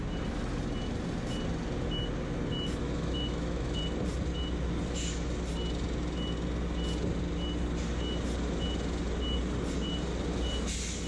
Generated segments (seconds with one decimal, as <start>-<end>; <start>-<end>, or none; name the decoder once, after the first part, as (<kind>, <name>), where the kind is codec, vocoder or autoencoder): 2.8-3.8 (autoencoder, DAC-VAE)